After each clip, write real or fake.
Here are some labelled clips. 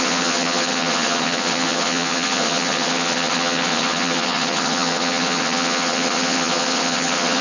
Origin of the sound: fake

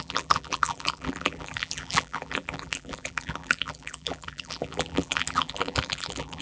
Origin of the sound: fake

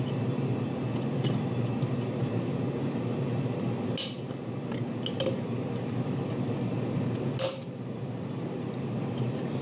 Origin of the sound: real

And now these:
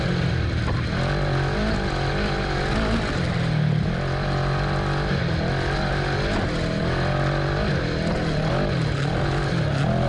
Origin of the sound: real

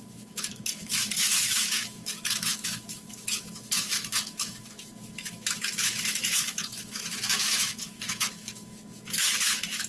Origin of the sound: fake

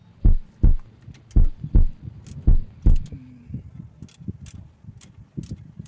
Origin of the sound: real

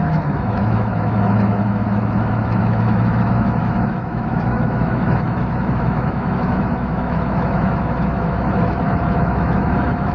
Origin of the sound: fake